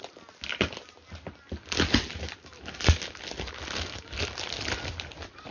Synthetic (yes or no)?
no